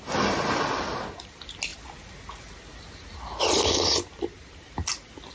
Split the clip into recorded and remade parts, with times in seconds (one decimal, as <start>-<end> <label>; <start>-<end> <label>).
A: 0.0-5.3 recorded